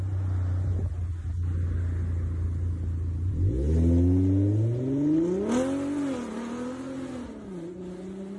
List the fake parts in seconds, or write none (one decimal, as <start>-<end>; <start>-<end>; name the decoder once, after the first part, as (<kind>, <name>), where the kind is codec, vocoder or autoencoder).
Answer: none